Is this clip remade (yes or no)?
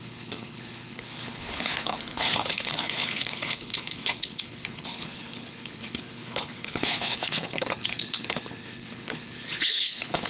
yes